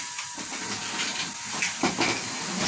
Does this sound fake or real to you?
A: real